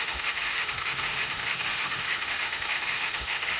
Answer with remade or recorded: remade